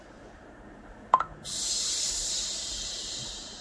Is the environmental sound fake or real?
fake